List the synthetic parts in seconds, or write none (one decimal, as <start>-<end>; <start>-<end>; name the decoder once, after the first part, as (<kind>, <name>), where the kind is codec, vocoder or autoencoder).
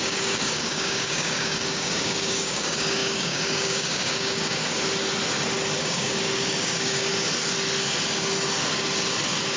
0.0-4.6 (codec, DAC); 5.8-7.1